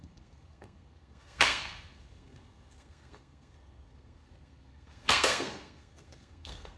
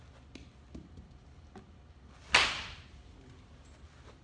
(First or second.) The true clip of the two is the second